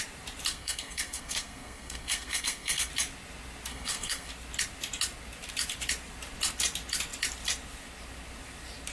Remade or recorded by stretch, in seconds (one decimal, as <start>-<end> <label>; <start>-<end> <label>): 0.0-0.5 recorded; 0.5-2.9 remade; 2.9-3.7 recorded; 3.7-4.3 remade; 4.3-8.9 recorded